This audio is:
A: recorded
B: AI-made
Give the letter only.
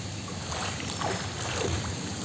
A